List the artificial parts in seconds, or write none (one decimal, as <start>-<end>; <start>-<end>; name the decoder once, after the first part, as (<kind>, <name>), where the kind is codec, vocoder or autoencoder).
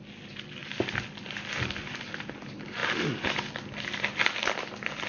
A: none